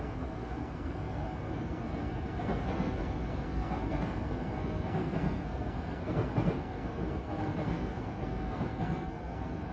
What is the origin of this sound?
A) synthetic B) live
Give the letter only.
A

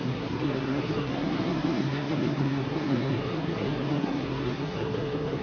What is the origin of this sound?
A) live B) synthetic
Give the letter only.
B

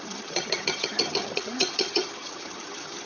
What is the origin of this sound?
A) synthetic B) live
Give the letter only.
A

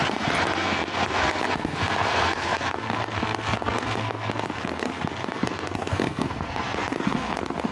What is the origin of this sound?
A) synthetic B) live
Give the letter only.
A